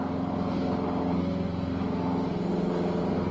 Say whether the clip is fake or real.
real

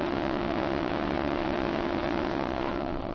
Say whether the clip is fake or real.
fake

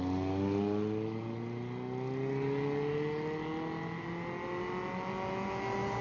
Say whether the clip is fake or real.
real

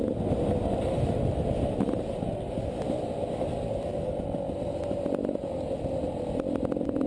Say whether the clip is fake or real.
real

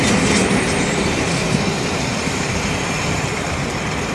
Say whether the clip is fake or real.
fake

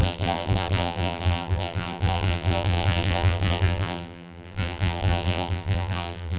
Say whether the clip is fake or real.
fake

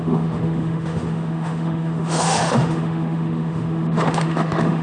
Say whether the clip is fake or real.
fake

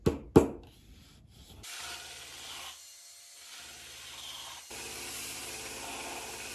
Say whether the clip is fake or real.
real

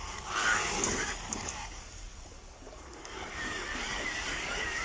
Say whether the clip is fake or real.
fake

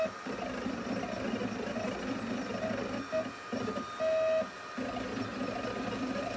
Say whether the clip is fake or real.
real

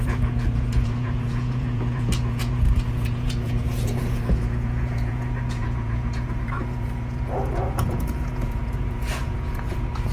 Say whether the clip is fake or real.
fake